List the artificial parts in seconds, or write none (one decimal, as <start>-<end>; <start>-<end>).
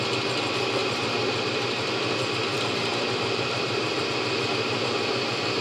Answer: 0.8-1.9; 2.5-3.9